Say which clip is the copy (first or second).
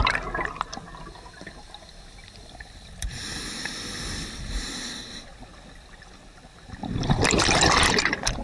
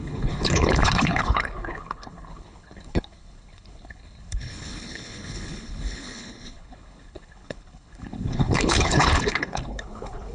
second